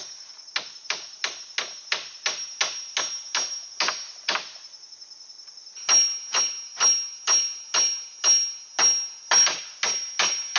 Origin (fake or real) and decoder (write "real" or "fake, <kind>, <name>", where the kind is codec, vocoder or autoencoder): real